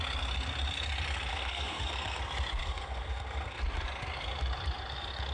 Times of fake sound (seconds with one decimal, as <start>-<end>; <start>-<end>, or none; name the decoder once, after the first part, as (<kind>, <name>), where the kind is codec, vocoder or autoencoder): 1.3-2.2 (codec, SNAC); 2.6-3.6